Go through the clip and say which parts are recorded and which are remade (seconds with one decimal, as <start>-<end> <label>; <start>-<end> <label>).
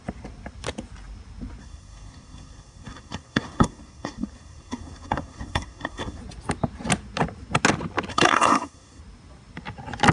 0.0-1.6 recorded; 1.6-6.2 remade; 6.2-8.1 recorded; 8.1-9.0 remade; 9.0-10.1 recorded